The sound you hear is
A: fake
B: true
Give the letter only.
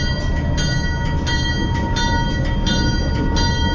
B